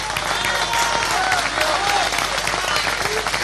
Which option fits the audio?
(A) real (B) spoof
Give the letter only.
A